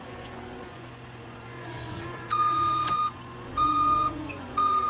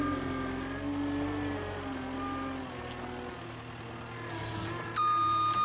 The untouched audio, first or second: second